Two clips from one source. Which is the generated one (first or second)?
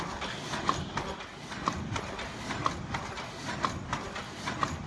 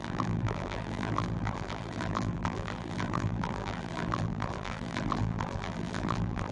second